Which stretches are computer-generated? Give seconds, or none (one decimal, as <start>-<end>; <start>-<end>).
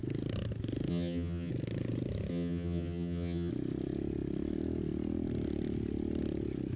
0.9-1.5; 2.3-3.5